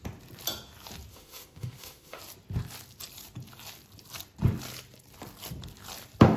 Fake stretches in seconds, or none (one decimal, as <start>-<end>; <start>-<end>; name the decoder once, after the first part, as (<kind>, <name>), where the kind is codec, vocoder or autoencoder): 1.1-2.2 (autoencoder, DAC-VAE)